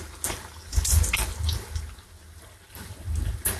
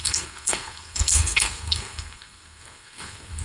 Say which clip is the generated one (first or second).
second